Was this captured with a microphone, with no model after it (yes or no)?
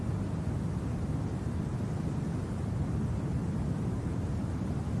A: yes